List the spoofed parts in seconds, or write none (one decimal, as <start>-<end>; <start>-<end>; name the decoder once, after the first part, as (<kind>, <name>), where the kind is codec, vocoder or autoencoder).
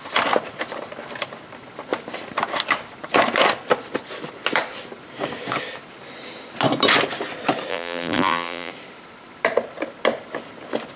7.7-8.7 (vocoder, BigVGAN v2)